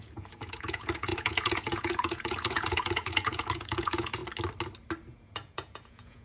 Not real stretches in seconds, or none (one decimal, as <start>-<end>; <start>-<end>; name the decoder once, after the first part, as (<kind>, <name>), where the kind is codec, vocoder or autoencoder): 0.0-4.2 (vocoder, Vocos); 5.1-6.2